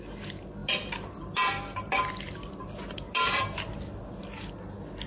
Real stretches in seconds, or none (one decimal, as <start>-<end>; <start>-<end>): 0.0-5.1